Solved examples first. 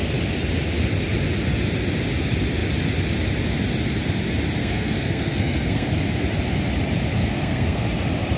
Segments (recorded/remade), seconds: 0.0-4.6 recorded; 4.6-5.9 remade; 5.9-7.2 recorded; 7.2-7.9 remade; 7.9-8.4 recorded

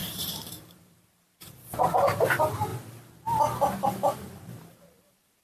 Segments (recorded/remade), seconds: 0.0-2.7 remade; 2.7-4.7 recorded; 4.7-5.4 remade

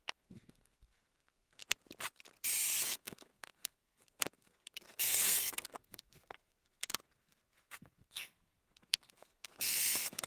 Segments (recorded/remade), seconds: 0.0-1.6 remade; 1.6-2.8 recorded; 2.8-10.3 remade

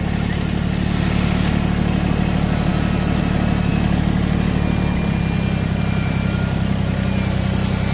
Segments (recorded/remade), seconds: 0.0-7.9 recorded

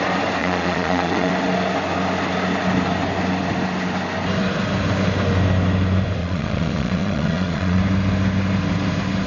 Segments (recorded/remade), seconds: 0.0-0.4 recorded; 0.4-1.3 remade; 1.3-6.2 recorded; 6.2-7.8 remade; 7.8-9.3 recorded

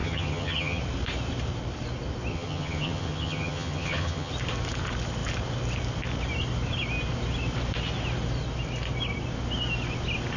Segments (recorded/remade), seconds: 0.0-0.8 remade; 0.8-2.3 recorded; 2.3-4.3 remade; 4.3-10.4 recorded

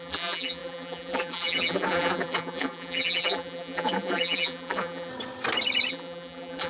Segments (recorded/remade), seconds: 0.0-5.1 remade; 5.1-5.9 recorded; 5.9-6.7 remade

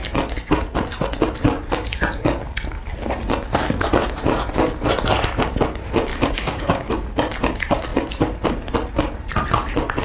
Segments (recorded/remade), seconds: 0.0-6.1 recorded; 6.1-6.9 remade; 6.9-10.0 recorded